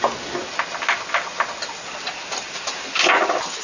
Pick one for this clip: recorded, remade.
recorded